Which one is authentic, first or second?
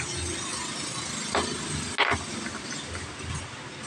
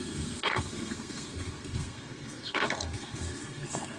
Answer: first